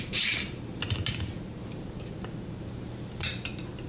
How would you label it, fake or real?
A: fake